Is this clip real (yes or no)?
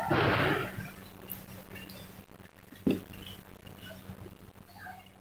yes